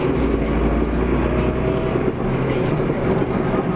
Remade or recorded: recorded